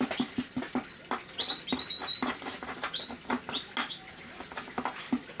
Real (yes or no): yes